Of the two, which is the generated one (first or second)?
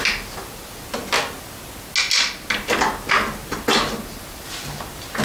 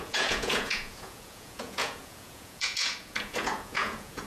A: second